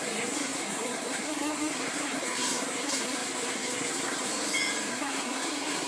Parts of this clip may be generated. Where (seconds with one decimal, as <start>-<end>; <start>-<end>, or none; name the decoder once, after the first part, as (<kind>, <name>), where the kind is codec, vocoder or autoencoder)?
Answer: 0.0-4.3 (codec, SNAC); 4.9-5.9